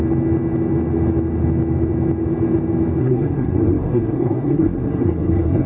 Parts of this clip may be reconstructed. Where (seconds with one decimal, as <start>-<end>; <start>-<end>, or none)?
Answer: 3.0-5.7

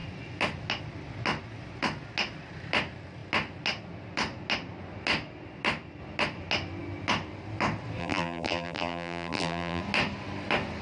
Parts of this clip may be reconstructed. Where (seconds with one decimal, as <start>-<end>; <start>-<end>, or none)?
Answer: 8.0-9.8

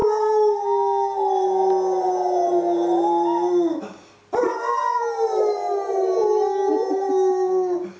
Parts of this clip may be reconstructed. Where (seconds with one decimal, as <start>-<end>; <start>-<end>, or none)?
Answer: none

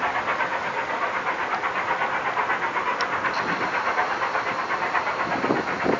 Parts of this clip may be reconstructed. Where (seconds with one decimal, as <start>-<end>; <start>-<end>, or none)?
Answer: none

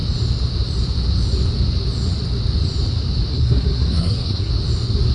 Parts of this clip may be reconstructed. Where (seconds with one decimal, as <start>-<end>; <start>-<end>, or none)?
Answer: 3.3-4.5